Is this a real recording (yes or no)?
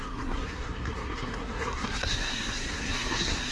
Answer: no